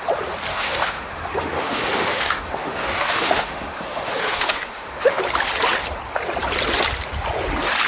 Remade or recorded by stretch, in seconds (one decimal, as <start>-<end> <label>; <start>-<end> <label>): 0.0-0.5 recorded; 0.5-5.2 remade; 5.2-7.9 recorded